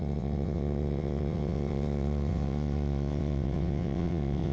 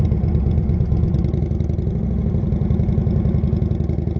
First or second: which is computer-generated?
first